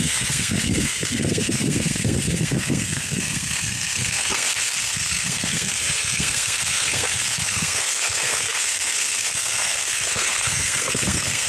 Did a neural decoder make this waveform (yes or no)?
yes